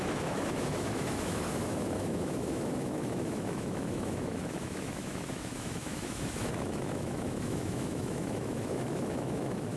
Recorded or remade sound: remade